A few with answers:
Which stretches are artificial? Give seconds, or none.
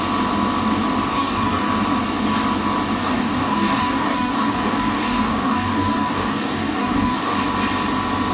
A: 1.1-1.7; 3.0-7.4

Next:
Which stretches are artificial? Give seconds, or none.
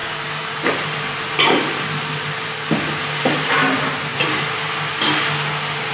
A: 0.0-0.6